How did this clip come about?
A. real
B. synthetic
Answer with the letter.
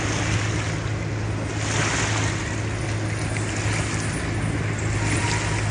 A